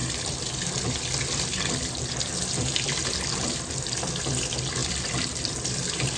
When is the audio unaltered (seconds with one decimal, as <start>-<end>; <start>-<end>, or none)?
0.0-6.2